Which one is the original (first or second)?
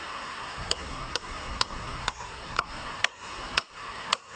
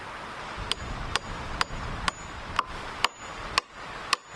second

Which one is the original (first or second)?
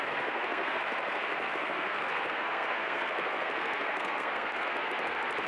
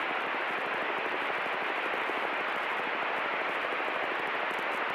second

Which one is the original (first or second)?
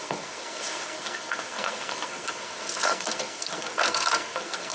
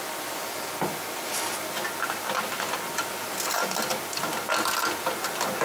second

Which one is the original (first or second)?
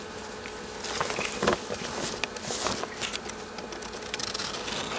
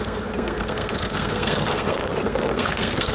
first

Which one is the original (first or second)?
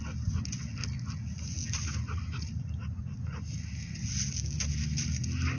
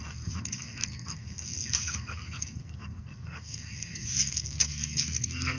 first